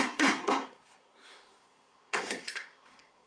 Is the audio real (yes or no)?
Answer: no